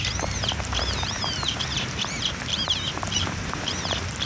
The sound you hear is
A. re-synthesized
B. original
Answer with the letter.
A